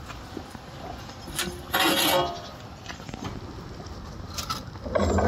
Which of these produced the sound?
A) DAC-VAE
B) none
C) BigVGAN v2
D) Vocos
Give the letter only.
B